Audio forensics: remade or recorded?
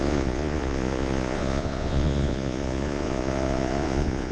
remade